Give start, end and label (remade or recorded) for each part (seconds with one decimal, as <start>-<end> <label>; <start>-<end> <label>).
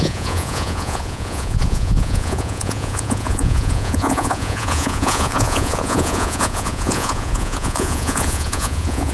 0.0-9.1 remade